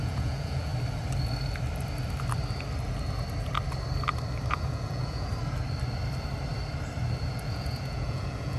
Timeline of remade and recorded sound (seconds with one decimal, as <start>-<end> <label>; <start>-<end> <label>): 0.0-0.7 remade; 0.7-4.5 recorded; 4.5-5.3 remade; 5.3-7.3 recorded; 7.3-8.6 remade